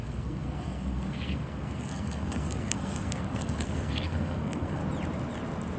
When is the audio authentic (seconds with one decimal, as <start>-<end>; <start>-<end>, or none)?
4.8-5.8